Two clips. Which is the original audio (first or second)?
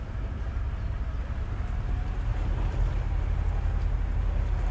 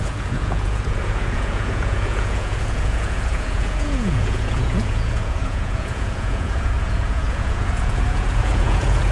first